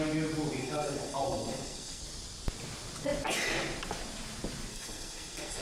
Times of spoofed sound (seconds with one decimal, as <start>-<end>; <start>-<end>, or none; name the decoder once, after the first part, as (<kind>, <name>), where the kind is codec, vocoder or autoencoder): 0.6-2.0 (codec, SNAC); 4.7-5.6